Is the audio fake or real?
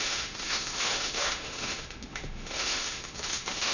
fake